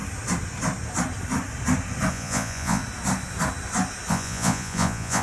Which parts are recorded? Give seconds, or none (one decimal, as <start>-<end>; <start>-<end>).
0.0-2.1; 2.8-4.1